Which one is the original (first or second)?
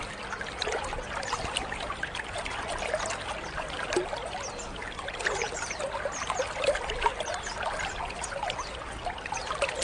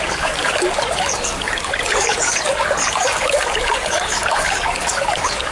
first